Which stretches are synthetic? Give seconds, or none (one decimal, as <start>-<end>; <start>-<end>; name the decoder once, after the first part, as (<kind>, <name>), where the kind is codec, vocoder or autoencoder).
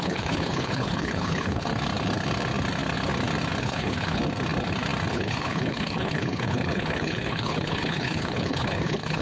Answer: 0.0-1.7 (codec, HILCodec); 3.6-4.2; 5.1-9.2